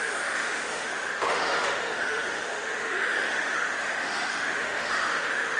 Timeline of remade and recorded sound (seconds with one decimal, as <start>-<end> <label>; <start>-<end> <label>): 0.0-5.6 remade